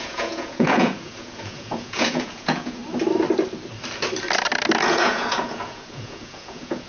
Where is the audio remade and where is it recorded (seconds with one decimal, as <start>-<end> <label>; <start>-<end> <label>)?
0.0-2.8 remade; 2.8-4.8 recorded; 4.8-6.9 remade